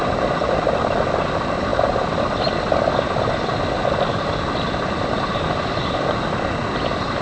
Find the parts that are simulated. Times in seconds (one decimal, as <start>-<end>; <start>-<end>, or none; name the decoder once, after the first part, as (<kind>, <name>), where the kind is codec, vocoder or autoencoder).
none